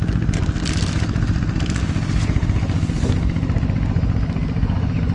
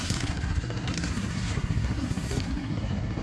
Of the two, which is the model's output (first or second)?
second